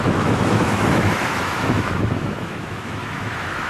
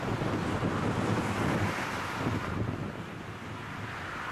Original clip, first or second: second